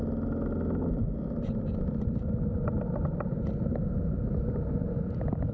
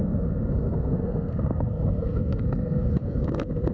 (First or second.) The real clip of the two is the first